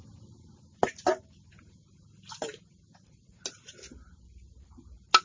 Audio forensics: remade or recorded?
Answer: recorded